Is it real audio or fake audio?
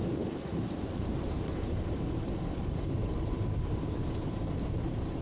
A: fake